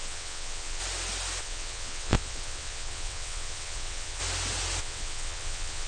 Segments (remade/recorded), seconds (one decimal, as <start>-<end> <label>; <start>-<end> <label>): 0.0-0.8 remade; 0.8-1.4 recorded; 1.4-4.2 remade; 4.2-4.8 recorded; 4.8-5.9 remade